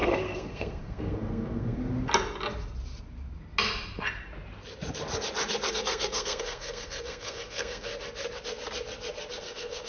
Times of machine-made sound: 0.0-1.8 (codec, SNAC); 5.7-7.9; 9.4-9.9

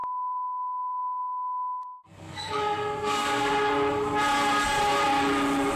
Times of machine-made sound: 0.0-3.5 (codec, SNAC)

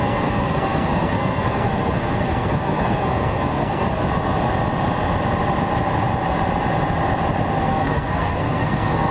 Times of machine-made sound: 0.0-4.0 (codec, SNAC); 7.6-9.1

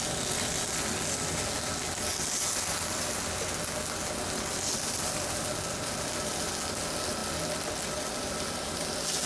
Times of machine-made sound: none

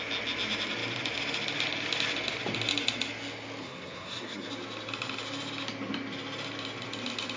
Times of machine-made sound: 3.6-4.5 (codec, SNAC)